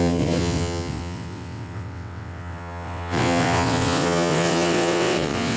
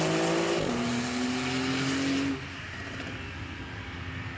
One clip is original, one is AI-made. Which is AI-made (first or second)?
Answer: first